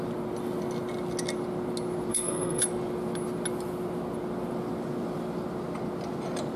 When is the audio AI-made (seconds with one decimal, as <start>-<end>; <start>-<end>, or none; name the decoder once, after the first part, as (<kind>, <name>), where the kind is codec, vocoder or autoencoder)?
2.1-2.6 (codec, SNAC)